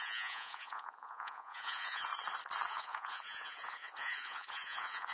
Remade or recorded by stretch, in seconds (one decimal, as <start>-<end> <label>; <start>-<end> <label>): 0.0-2.1 remade; 2.1-2.7 recorded; 2.7-5.1 remade